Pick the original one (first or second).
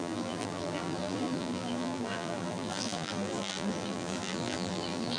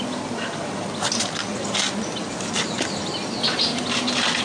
second